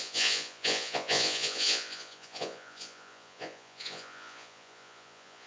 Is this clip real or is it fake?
fake